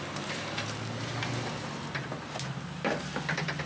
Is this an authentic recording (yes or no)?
yes